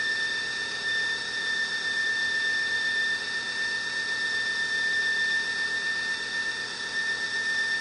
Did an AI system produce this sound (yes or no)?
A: no